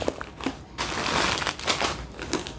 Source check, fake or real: real